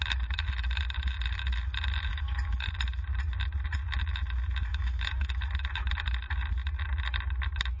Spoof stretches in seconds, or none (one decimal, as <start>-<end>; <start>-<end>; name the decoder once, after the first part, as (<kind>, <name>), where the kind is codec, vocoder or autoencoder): 2.1-2.7 (autoencoder, DAC-VAE); 4.7-5.4